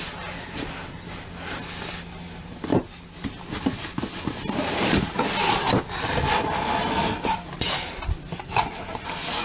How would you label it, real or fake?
real